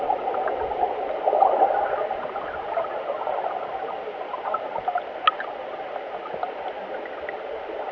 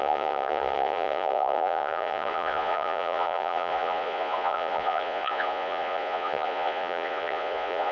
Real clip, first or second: first